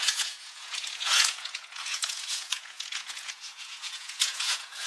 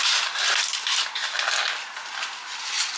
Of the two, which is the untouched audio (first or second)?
second